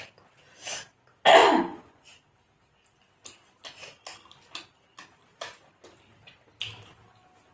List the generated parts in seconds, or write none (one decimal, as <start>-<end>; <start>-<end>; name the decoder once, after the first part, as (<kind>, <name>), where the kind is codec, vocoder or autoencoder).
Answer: 1.4-2.1 (vocoder, Vocos)